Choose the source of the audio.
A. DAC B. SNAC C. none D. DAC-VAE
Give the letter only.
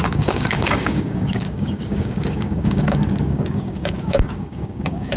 A